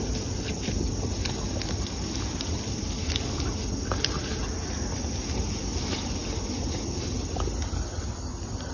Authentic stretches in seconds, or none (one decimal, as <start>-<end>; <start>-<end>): 0.0-8.7